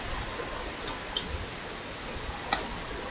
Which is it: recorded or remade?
recorded